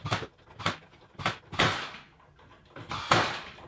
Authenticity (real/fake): real